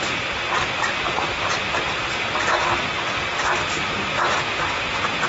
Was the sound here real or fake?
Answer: real